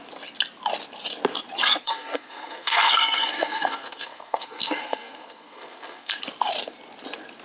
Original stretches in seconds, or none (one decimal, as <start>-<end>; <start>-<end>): 0.0-1.8; 6.2-7.4